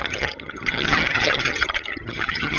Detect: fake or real fake